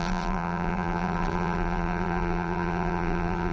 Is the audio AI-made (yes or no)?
yes